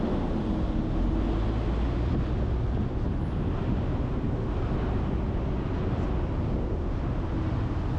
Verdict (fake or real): real